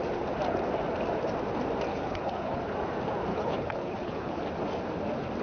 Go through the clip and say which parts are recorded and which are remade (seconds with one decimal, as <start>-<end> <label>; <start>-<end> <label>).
0.0-1.9 recorded; 1.9-2.6 remade; 2.6-3.3 recorded; 3.3-4.4 remade; 4.4-5.4 recorded